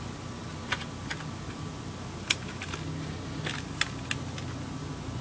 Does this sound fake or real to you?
real